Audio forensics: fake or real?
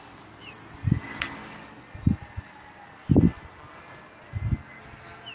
real